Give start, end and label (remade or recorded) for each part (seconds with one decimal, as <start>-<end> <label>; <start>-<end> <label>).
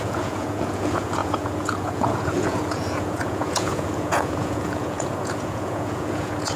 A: 0.0-6.6 remade